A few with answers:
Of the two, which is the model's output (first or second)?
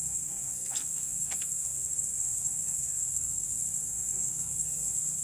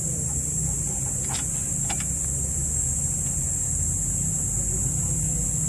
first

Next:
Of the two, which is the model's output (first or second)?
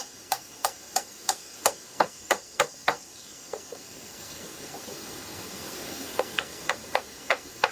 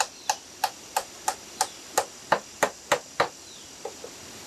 first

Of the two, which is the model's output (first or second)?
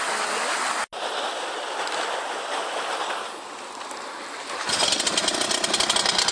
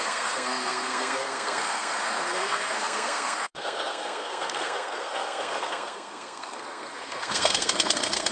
second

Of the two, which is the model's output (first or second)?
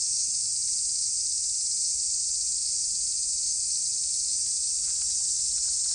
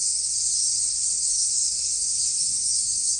second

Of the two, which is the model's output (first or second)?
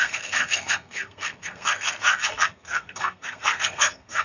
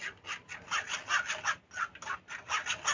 first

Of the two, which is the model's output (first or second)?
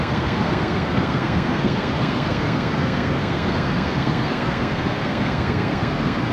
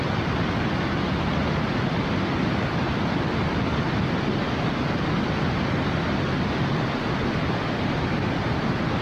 first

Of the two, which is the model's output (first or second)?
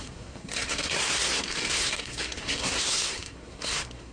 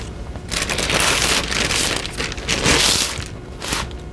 first